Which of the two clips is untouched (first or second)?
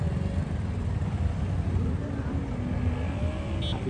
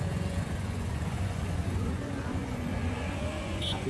first